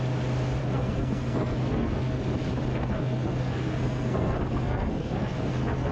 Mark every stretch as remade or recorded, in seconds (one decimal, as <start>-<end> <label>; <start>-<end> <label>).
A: 0.0-0.6 recorded; 0.6-2.2 remade; 2.2-2.7 recorded; 2.7-5.9 remade